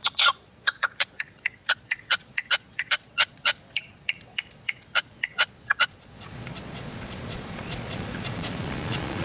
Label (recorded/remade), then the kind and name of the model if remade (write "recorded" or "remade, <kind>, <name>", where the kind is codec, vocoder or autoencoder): remade, vocoder, Vocos